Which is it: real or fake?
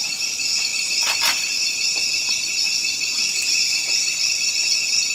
real